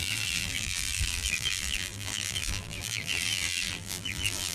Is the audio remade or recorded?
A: remade